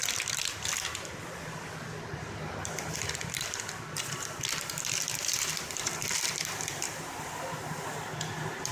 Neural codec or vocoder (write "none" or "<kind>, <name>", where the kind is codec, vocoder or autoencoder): vocoder, BigVGAN v2